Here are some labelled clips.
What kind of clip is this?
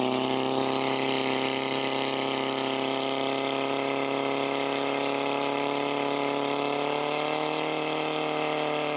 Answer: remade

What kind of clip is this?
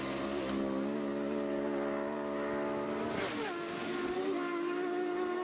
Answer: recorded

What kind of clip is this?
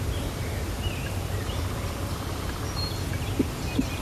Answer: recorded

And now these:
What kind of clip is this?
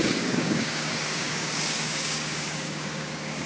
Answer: remade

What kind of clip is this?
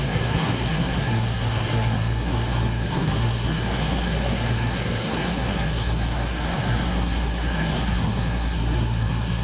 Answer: remade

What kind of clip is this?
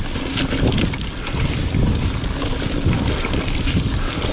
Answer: recorded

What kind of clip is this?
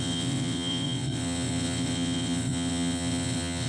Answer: remade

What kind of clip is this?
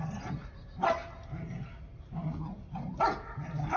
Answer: recorded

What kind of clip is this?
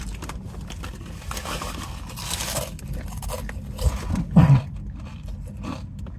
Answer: recorded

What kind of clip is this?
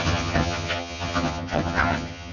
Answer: remade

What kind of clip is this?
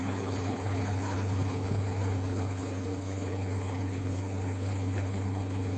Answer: remade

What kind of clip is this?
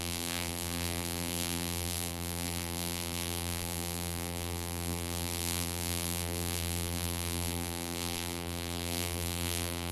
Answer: remade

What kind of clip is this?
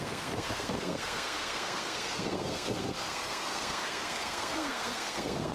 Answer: remade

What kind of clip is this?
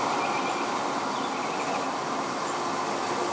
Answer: recorded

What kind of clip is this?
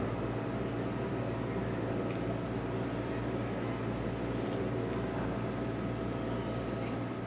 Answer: recorded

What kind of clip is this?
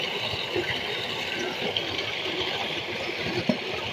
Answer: recorded